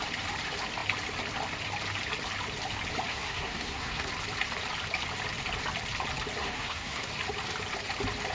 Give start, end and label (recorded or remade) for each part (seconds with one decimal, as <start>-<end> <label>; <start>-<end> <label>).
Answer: 0.0-3.1 recorded; 3.1-4.1 remade; 4.1-6.4 recorded; 6.4-7.1 remade; 7.1-8.3 recorded